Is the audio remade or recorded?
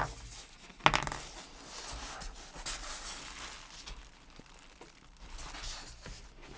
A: recorded